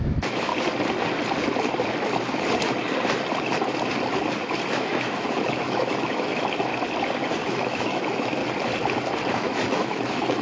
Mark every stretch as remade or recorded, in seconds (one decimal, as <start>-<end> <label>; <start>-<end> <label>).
0.0-0.5 remade; 0.5-4.7 recorded; 4.7-6.7 remade; 6.7-7.5 recorded; 7.5-8.4 remade; 8.4-9.3 recorded; 9.3-10.4 remade